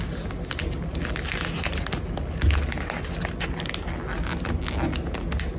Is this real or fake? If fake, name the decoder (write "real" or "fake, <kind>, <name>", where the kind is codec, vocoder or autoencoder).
real